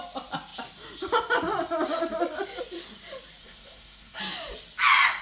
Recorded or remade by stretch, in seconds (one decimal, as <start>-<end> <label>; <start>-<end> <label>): 0.0-3.4 recorded; 3.4-4.2 remade; 4.2-5.2 recorded